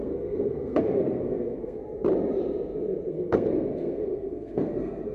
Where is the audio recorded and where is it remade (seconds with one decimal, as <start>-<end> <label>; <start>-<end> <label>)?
0.0-1.8 remade; 1.8-3.1 recorded; 3.1-5.1 remade